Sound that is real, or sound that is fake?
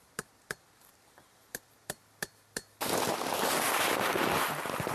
real